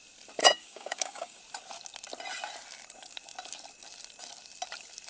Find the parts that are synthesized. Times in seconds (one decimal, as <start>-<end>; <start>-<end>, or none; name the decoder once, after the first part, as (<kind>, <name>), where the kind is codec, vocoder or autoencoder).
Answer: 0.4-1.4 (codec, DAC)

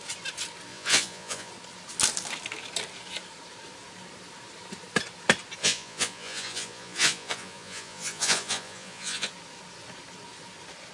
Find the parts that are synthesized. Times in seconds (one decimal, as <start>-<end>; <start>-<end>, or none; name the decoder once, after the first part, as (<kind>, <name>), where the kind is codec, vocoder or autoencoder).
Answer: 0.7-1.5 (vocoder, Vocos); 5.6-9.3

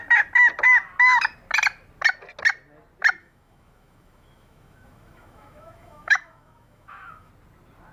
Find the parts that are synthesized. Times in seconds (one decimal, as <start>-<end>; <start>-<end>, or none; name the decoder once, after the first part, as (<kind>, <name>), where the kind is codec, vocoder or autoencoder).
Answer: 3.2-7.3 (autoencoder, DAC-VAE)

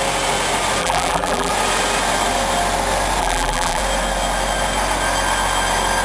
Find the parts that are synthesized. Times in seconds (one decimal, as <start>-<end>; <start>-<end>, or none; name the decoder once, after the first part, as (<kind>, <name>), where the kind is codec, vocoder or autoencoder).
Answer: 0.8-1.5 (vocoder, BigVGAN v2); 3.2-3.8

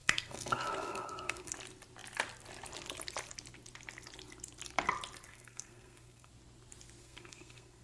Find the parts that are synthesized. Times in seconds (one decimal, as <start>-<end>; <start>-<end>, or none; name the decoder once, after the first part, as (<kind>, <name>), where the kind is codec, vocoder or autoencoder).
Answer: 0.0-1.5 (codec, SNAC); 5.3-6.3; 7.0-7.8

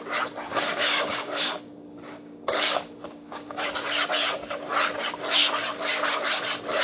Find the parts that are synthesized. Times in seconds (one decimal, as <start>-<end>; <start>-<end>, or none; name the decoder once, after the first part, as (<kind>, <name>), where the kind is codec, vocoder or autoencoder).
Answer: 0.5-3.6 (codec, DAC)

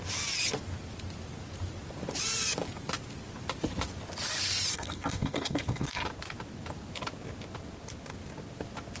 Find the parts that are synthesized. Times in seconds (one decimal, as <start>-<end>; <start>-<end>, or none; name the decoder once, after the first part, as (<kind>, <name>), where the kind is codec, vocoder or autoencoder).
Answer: 4.7-6.0 (codec, SNAC)

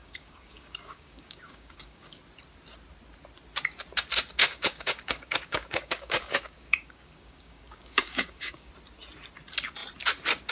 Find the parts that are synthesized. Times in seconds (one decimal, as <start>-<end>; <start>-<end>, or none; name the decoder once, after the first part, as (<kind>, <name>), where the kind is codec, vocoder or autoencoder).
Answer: 0.0-2.2 (codec, DAC); 4.4-8.7